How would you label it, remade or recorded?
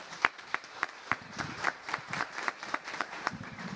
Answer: remade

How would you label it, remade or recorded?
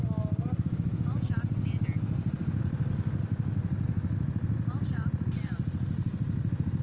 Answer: recorded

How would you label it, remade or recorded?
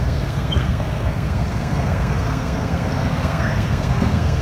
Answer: remade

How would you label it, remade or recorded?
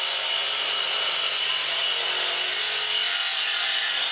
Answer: recorded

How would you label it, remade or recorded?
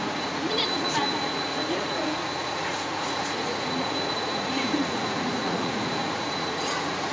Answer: remade